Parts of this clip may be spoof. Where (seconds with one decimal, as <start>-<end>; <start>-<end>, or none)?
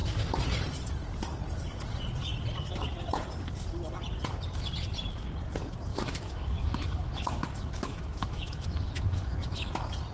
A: 5.9-9.7